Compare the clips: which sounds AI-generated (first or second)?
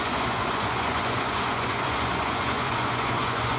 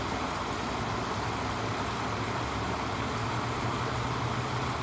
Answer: first